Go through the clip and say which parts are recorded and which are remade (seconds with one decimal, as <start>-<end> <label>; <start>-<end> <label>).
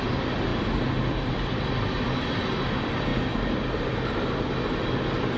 0.0-0.5 remade; 0.5-1.1 recorded; 1.1-3.1 remade; 3.1-4.5 recorded; 4.5-5.4 remade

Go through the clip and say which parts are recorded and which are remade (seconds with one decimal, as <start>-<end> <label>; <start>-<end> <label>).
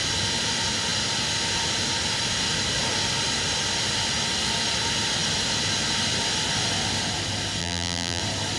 0.0-7.6 recorded; 7.6-8.2 remade; 8.2-8.6 recorded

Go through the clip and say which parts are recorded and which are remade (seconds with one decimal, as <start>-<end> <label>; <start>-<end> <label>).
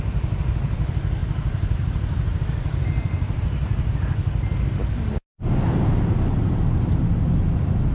0.0-1.2 recorded; 1.2-2.4 remade; 2.4-7.9 recorded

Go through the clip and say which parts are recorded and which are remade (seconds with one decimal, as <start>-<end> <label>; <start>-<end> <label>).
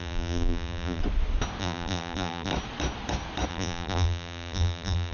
0.0-1.0 remade; 1.0-1.6 recorded; 1.6-2.5 remade; 2.5-3.5 recorded; 3.5-5.1 remade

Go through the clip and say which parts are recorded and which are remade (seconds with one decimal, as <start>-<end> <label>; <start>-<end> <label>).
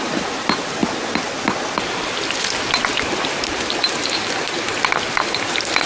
0.0-5.9 recorded